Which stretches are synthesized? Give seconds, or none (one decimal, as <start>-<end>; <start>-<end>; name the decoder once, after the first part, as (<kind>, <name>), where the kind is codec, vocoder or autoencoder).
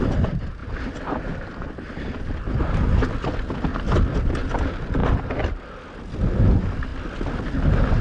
0.0-3.7 (vocoder, BigVGAN v2); 4.3-5.0; 6.0-8.0